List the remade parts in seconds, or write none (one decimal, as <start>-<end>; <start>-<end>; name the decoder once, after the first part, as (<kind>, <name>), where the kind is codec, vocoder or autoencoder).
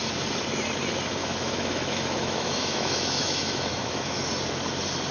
1.2-4.3 (autoencoder, DAC-VAE)